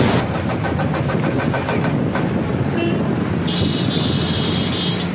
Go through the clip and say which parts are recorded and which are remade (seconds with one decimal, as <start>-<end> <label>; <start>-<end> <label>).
0.0-5.1 recorded